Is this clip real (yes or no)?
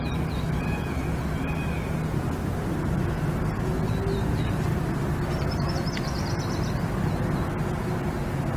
yes